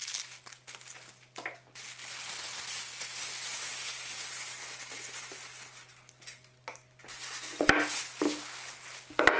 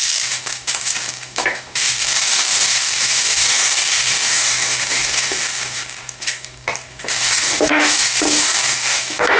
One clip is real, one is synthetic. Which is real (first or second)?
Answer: first